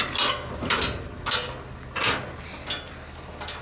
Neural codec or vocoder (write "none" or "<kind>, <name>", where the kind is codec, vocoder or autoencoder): none